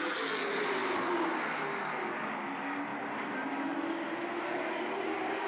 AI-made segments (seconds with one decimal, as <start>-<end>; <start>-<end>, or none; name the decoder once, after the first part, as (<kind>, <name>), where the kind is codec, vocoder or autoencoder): none